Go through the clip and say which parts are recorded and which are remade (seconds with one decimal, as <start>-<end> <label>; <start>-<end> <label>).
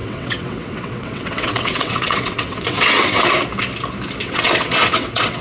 0.0-3.2 remade; 3.2-4.2 recorded; 4.2-5.4 remade